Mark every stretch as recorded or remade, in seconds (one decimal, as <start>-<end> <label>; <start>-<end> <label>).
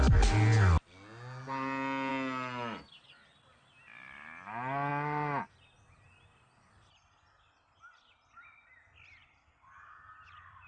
0.0-10.7 recorded